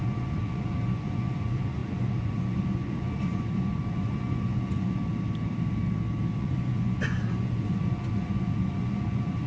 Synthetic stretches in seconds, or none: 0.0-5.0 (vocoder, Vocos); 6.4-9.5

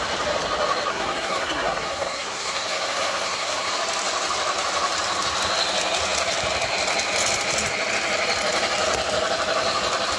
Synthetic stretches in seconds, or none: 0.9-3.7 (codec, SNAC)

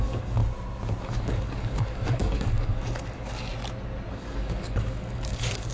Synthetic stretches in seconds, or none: 0.0-0.4 (codec, DAC); 1.0-3.5; 4.1-5.7

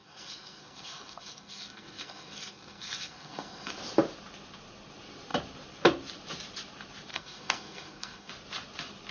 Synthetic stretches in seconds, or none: 0.0-3.7 (codec, SNAC); 7.1-8.3

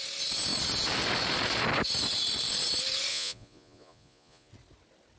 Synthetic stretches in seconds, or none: 3.1-4.5 (vocoder, Vocos)

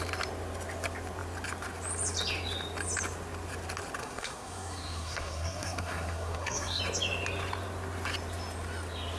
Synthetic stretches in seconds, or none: 4.0-6.8 (codec, SNAC)

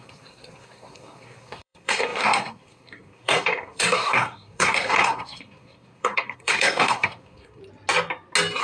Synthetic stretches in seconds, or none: 0.0-7.6 (codec, SNAC)